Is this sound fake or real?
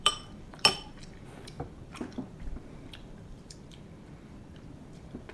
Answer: fake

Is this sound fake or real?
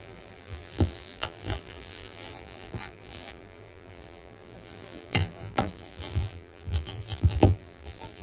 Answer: fake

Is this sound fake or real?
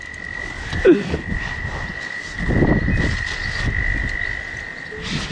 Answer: real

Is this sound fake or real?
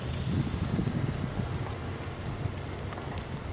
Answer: real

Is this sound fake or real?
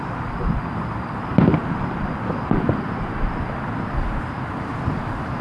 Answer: real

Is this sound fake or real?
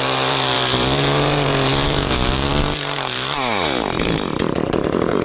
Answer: fake